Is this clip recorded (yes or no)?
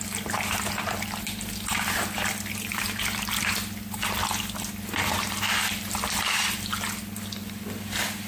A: no